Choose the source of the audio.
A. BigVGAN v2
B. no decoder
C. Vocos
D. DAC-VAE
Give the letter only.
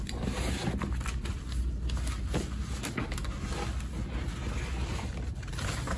B